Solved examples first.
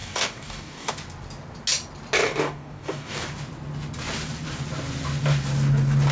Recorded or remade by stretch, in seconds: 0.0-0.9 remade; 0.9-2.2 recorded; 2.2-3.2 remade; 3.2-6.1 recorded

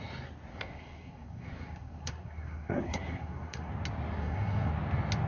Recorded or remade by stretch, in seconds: 0.0-0.5 recorded; 0.5-3.7 remade; 3.7-4.2 recorded; 4.2-4.7 remade; 4.7-5.3 recorded